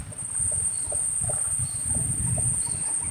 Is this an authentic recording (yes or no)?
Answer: no